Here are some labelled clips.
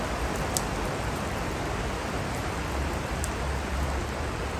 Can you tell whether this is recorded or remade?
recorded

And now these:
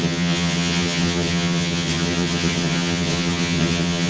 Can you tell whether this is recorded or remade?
remade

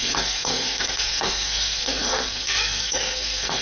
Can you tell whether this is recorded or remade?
remade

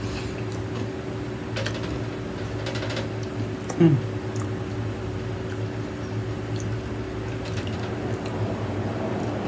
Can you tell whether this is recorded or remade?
recorded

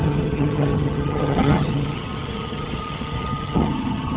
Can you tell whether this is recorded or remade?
remade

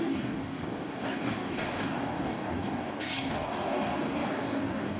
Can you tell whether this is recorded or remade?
remade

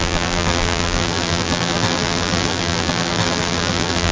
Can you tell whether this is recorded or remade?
remade